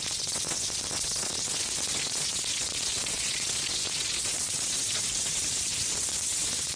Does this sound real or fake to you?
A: fake